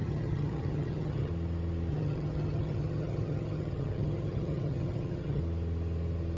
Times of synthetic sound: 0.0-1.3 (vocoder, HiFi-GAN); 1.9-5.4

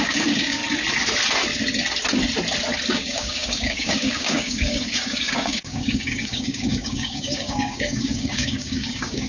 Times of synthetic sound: 0.0-0.6 (codec, DAC); 2.9-9.3